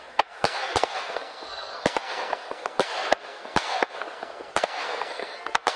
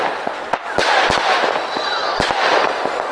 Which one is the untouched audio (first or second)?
second